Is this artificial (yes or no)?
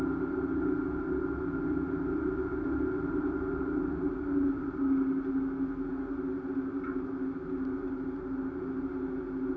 no